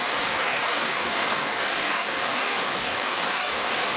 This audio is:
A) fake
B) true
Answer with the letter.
A